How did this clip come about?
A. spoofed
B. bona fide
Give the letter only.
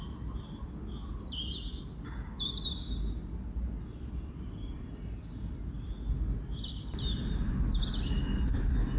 B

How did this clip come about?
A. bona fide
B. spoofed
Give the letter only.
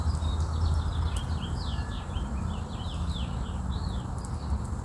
A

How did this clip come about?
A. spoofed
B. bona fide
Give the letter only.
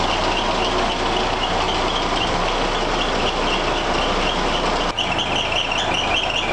B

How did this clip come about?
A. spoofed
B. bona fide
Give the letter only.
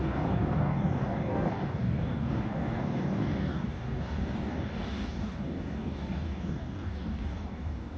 A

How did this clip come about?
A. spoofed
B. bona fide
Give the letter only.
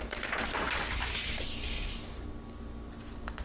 B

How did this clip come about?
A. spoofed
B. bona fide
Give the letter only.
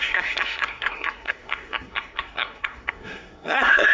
A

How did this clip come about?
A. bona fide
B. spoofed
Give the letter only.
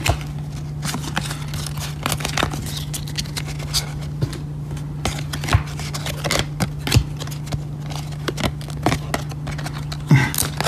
A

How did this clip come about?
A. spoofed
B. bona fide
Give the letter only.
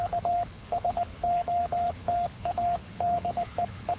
A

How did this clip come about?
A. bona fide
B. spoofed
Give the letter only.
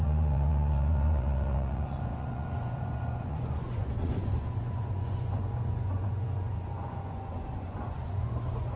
B